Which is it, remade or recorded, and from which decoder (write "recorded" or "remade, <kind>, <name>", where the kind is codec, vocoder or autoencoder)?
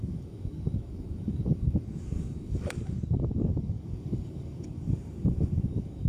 remade, codec, DAC